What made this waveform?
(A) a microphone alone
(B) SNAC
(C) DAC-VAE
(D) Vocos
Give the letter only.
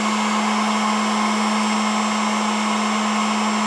A